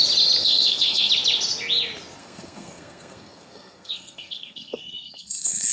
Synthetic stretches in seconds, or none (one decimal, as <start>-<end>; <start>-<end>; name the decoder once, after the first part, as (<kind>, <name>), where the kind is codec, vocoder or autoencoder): 0.4-1.1 (codec, SNAC); 2.2-5.7

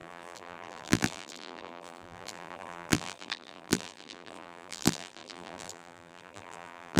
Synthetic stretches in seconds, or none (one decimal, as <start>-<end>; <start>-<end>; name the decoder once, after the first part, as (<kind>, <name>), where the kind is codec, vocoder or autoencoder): 0.0-7.0 (vocoder, BigVGAN v2)

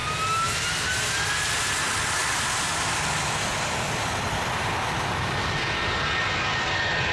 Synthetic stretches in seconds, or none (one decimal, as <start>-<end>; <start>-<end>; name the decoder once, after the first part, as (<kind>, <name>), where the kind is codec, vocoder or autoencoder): none

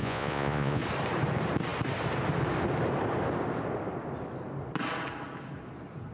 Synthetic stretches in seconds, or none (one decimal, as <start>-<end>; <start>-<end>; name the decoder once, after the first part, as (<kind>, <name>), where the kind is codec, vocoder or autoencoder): 0.0-0.8 (vocoder, Vocos)

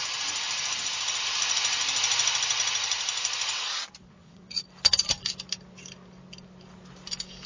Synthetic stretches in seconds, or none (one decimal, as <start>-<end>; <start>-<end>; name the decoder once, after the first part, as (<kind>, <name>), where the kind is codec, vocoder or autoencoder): 4.0-4.6 (vocoder, WaveNeXt)

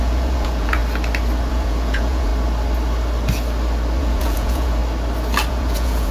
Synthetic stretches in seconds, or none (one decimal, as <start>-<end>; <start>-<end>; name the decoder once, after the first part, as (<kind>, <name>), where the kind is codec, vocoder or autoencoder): 0.0-0.8 (vocoder, Vocos); 1.5-2.3; 4.0-4.8; 5.5-6.1